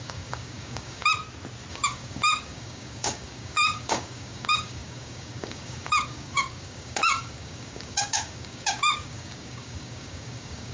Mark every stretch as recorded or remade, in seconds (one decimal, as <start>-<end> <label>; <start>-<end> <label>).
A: 0.0-1.1 remade; 1.1-1.7 recorded; 1.7-10.7 remade